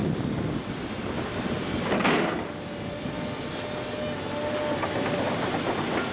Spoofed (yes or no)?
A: no